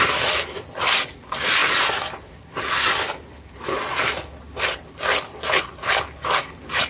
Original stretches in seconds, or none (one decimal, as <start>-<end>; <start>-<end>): 0.0-6.9